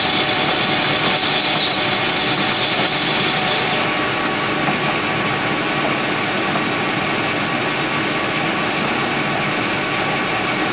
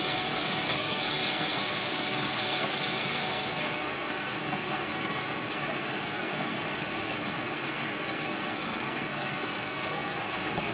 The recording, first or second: first